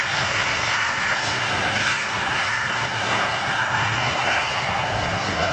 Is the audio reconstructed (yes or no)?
yes